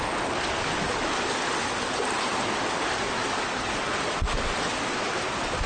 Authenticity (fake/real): real